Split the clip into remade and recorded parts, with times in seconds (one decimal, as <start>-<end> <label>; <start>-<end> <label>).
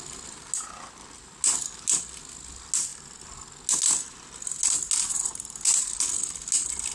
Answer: 0.0-6.9 recorded